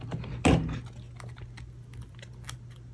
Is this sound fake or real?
real